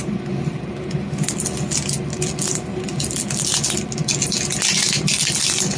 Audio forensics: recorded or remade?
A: recorded